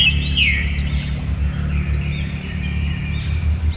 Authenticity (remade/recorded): recorded